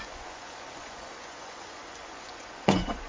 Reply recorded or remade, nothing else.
remade